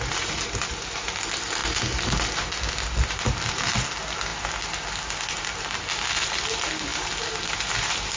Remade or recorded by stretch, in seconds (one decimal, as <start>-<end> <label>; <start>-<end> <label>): 0.0-8.2 recorded